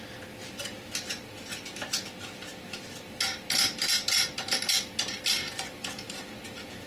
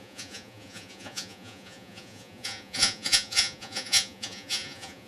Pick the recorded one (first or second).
first